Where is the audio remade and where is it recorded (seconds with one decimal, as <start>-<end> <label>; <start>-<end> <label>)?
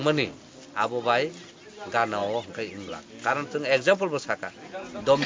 0.0-5.3 recorded